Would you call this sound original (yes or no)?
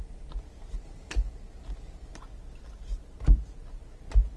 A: yes